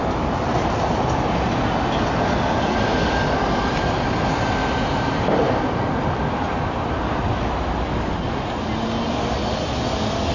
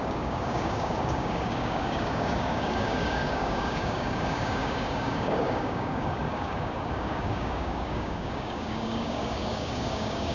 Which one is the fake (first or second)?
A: second